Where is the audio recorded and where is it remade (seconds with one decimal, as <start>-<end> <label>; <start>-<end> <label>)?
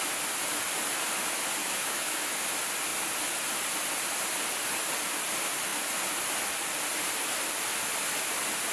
0.0-1.6 recorded; 1.6-2.4 remade; 2.4-8.7 recorded